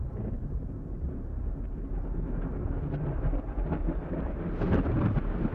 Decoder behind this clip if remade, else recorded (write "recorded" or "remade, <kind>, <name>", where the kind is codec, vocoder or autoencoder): recorded